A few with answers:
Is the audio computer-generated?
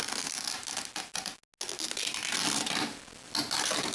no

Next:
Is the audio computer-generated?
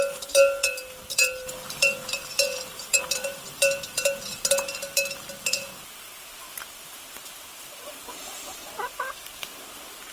yes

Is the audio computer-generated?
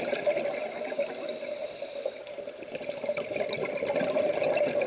yes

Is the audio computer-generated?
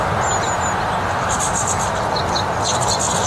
no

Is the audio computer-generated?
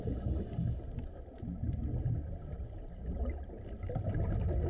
no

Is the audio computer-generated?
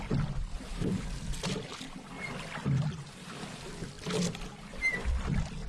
no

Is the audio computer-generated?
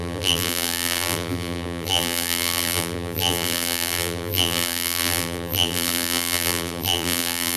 yes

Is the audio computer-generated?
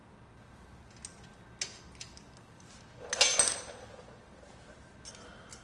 no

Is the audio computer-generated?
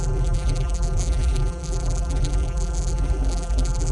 yes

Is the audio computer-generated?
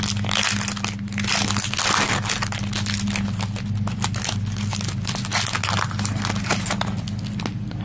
no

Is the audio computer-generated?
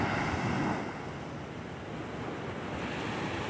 no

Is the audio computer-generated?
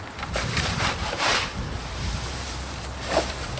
yes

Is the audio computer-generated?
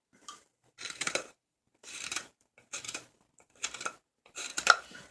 yes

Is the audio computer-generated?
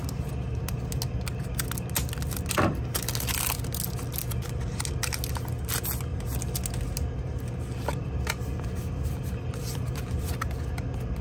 no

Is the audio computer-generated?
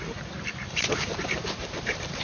yes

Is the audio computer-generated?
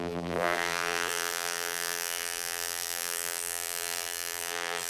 yes